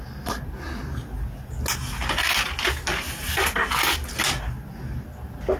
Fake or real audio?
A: real